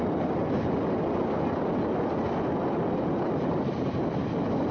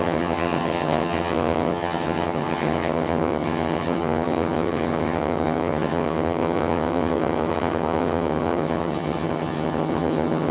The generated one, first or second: second